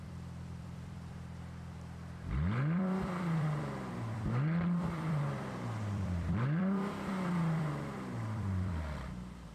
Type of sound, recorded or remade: remade